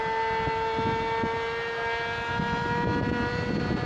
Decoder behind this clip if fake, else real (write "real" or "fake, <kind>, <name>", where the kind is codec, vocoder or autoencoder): real